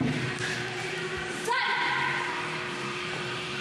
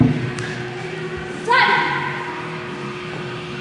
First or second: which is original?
second